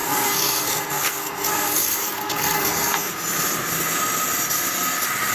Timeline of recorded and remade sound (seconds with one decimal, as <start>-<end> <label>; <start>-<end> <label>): 0.0-3.1 remade; 3.1-5.3 recorded